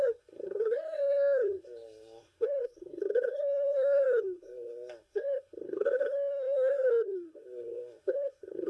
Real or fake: fake